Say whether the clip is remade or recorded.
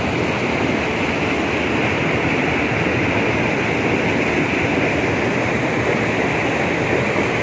recorded